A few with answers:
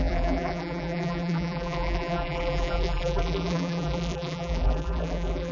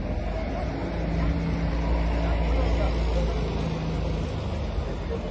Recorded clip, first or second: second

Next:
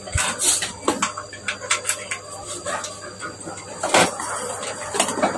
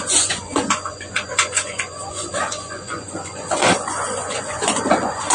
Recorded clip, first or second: first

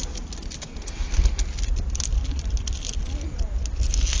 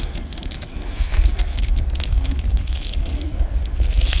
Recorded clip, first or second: first